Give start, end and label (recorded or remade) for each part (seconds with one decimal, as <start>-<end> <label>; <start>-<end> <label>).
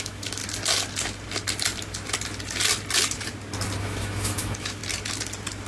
0.0-0.4 remade; 0.4-3.8 recorded; 3.8-4.8 remade; 4.8-5.7 recorded